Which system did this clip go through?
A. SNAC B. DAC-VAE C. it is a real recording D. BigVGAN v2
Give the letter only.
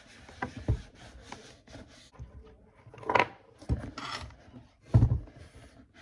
C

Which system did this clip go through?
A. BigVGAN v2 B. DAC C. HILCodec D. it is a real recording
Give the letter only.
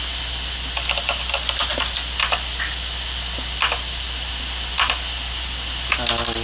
D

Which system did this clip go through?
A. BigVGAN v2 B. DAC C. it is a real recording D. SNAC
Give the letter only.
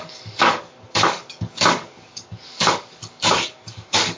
B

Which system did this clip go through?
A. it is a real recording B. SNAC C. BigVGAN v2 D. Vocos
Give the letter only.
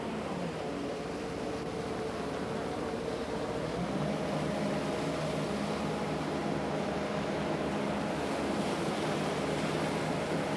A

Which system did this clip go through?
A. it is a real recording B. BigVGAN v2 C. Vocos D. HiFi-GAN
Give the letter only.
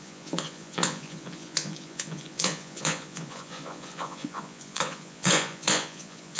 C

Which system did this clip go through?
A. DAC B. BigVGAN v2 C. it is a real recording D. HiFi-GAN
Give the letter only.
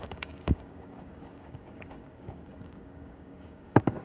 A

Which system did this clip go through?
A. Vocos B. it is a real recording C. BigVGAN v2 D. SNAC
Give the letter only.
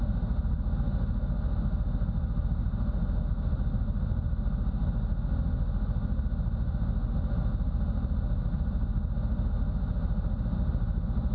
B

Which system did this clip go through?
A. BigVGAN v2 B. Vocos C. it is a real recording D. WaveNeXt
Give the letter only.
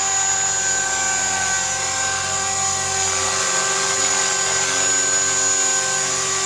C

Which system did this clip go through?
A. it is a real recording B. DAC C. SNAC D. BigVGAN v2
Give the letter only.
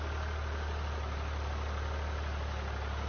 A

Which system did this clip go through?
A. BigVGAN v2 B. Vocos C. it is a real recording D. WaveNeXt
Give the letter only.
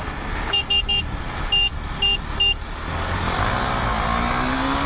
C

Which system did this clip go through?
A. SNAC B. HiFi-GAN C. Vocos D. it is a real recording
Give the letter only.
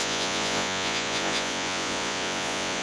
C